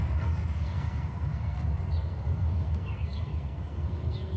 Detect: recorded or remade remade